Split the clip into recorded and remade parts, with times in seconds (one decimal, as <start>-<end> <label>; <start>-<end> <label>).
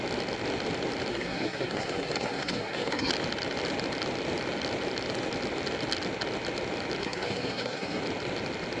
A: 0.0-1.1 recorded; 1.1-3.1 remade; 3.1-7.0 recorded; 7.0-8.0 remade; 8.0-8.8 recorded